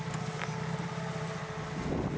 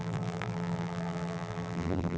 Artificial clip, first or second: second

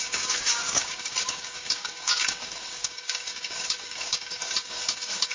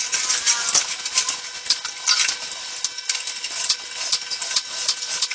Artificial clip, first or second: first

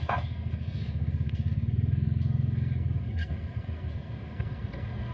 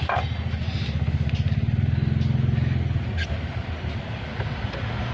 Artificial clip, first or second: first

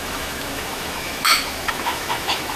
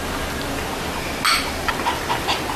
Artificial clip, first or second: first